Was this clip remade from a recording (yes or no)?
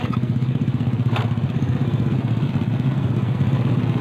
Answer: yes